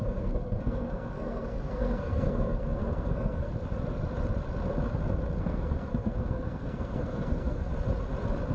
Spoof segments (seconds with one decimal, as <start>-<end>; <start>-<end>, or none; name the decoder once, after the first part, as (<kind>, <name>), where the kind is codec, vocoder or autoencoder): 0.0-3.5 (codec, SNAC); 5.4-7.7